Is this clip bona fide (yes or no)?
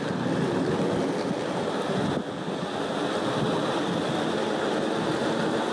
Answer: yes